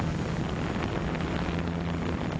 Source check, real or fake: real